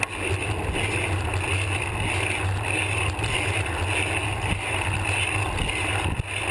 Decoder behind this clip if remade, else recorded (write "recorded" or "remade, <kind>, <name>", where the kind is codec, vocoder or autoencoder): recorded